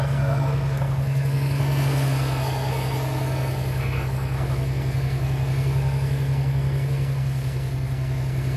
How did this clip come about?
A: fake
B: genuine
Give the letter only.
A